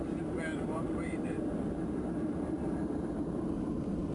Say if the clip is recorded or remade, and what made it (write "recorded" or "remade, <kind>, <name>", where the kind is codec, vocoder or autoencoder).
remade, vocoder, BigVGAN v2